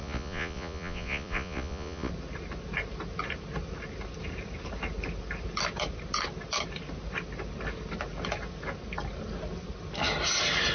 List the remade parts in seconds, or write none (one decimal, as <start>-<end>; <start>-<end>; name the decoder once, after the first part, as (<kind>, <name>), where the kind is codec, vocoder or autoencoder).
0.0-2.1 (vocoder, Vocos)

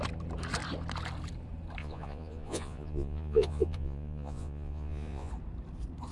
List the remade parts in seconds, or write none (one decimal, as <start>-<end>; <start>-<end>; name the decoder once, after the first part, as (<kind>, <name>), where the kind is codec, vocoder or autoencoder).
1.8-5.3 (vocoder, Vocos)